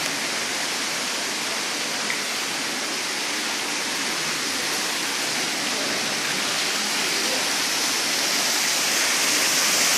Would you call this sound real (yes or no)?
yes